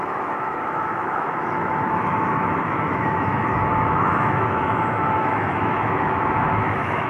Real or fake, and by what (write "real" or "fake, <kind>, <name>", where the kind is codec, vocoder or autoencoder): fake, autoencoder, DAC-VAE